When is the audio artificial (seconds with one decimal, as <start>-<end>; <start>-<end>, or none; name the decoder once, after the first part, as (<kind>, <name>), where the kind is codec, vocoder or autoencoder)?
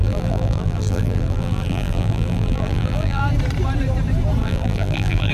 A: 0.0-3.2 (vocoder, BigVGAN v2); 4.4-5.3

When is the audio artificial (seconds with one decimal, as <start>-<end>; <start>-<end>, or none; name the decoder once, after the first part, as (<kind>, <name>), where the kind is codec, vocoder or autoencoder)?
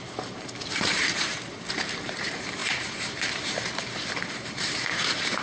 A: 0.0-1.3 (vocoder, BigVGAN v2); 2.0-5.4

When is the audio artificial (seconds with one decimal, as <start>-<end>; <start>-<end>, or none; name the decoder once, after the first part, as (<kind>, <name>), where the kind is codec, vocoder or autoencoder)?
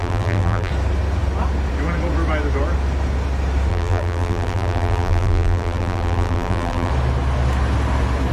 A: 0.0-0.7 (vocoder, BigVGAN v2); 3.7-6.9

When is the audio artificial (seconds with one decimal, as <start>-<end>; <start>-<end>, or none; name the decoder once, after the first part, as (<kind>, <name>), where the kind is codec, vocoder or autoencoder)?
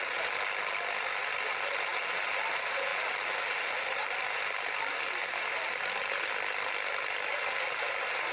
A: none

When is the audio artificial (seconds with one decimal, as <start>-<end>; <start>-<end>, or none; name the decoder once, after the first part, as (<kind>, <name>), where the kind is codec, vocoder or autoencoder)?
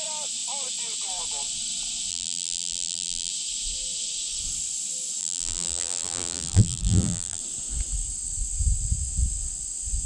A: 2.1-3.3 (vocoder, BigVGAN v2); 5.2-7.4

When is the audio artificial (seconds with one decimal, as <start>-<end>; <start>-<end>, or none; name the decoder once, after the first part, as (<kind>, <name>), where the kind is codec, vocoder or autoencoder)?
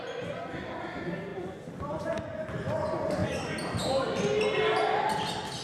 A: none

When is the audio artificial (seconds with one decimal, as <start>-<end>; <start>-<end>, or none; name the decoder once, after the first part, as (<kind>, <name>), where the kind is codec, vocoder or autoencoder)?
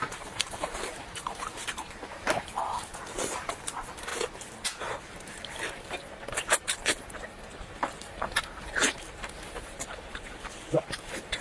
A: 0.0-11.4 (vocoder, BigVGAN v2)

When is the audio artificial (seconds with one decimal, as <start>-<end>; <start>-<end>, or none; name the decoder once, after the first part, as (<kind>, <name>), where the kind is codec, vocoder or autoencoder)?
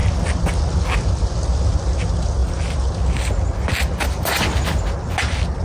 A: 2.4-2.9 (vocoder, BigVGAN v2)